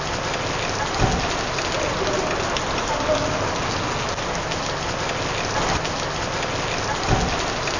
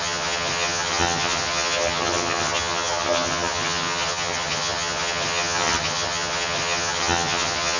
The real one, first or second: first